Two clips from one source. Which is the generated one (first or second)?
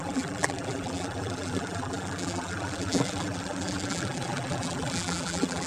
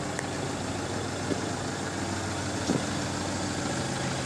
first